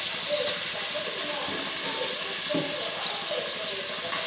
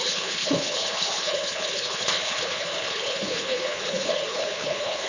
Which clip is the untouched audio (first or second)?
first